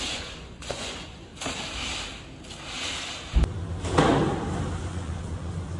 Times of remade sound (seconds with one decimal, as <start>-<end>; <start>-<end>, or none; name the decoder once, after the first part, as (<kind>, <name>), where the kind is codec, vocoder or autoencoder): 0.0-1.3 (vocoder, Vocos); 4.8-5.8